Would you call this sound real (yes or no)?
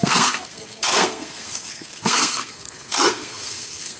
no